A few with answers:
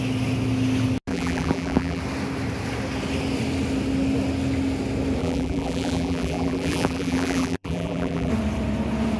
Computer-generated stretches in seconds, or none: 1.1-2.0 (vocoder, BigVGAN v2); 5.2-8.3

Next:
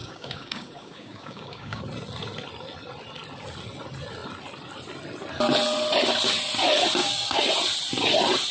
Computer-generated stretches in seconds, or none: 0.0-1.8 (codec, DAC); 7.0-7.5

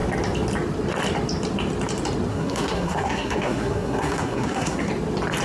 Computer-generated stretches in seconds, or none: 2.3-4.9 (codec, SNAC)

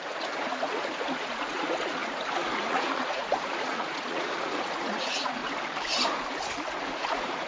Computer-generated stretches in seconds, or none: 0.0-5.4 (vocoder, Vocos); 6.7-7.5